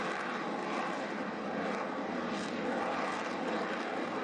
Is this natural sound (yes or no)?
yes